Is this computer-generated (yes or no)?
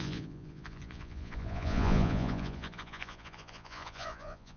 yes